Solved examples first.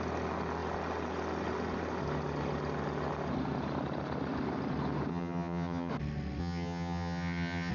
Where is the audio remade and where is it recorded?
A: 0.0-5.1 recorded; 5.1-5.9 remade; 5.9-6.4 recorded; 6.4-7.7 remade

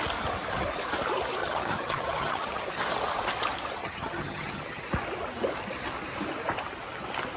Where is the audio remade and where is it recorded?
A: 0.0-1.4 recorded; 1.4-2.7 remade; 2.7-3.8 recorded; 3.8-4.8 remade; 4.8-7.4 recorded

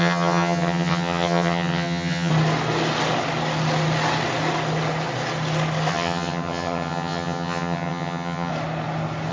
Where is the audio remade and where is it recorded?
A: 0.0-2.3 remade; 2.3-5.9 recorded; 5.9-8.5 remade; 8.5-9.3 recorded

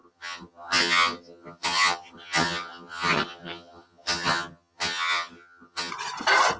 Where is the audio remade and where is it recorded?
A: 0.0-5.9 remade; 5.9-6.6 recorded

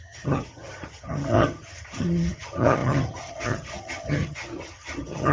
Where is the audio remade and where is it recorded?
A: 0.0-5.3 remade